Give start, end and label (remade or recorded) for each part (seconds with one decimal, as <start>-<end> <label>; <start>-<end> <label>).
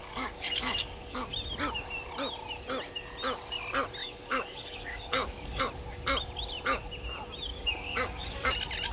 0.0-1.3 remade; 1.3-4.0 recorded; 4.0-5.6 remade; 5.6-7.5 recorded; 7.5-8.5 remade; 8.5-8.9 recorded